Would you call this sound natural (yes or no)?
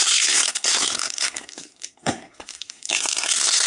no